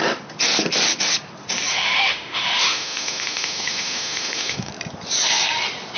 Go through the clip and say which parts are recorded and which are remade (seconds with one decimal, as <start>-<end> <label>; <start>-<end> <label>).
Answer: 0.0-1.7 recorded; 1.7-4.7 remade; 4.7-6.0 recorded